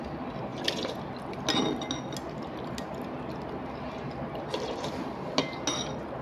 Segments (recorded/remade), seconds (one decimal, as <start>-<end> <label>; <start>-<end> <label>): 0.0-6.2 recorded